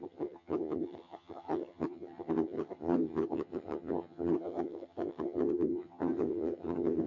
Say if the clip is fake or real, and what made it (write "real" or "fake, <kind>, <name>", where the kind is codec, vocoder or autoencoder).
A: fake, vocoder, HiFi-GAN